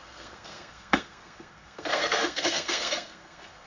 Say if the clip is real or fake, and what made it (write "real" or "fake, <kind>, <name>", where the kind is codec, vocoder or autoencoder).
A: fake, codec, SNAC